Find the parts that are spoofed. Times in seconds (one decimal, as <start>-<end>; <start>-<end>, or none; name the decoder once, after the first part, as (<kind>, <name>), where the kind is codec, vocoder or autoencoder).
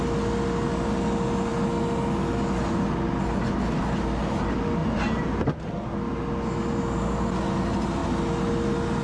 4.8-5.4 (vocoder, BigVGAN v2)